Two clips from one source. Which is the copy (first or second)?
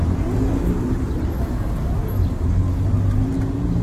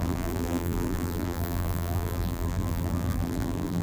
second